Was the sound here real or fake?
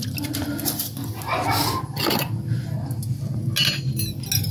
real